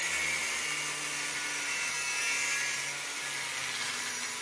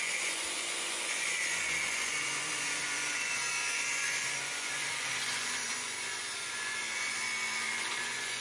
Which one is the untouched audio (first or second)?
first